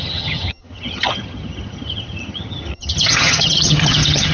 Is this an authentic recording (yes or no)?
no